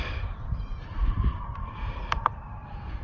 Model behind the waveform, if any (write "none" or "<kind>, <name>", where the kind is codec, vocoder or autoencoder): vocoder, BigVGAN v2